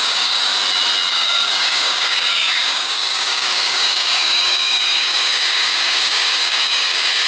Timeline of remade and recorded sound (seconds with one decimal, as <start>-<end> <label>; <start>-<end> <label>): 0.0-0.5 remade; 0.5-1.1 recorded; 1.1-7.3 remade